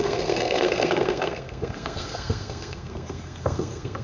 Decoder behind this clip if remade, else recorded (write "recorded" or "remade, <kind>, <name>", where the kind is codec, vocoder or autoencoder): remade, codec, SNAC